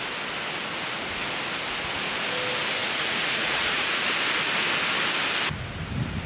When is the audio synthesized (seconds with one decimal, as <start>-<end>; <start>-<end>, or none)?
2.8-4.1